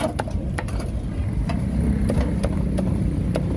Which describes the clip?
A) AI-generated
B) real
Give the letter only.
B